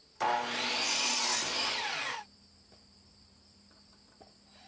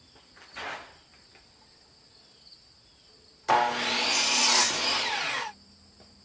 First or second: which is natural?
second